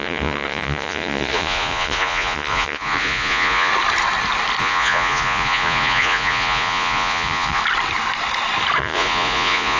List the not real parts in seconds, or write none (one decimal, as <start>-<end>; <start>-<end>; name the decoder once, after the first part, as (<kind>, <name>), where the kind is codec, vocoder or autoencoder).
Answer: 0.0-3.7 (vocoder, Vocos); 4.6-7.6; 8.8-9.8